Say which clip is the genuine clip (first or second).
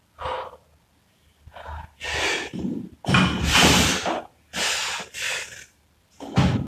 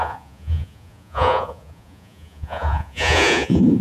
first